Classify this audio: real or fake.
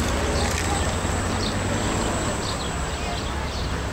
real